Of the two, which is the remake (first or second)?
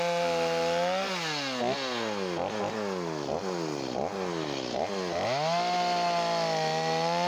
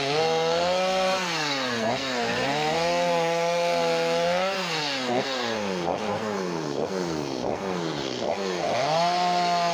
second